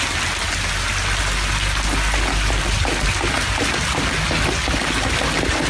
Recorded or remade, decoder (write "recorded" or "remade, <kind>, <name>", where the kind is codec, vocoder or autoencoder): recorded